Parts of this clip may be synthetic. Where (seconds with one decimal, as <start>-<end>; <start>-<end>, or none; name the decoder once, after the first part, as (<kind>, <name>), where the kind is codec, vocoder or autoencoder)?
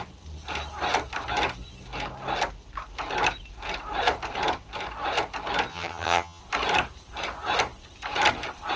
5.7-6.4 (vocoder, HiFi-GAN)